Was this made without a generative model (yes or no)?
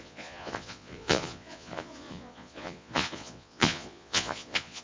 no